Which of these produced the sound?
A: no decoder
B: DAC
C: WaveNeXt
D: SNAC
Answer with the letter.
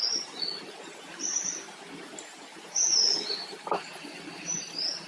A